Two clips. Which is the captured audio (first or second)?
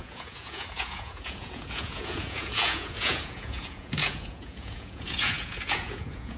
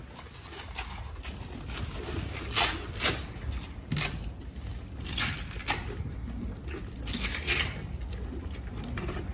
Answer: second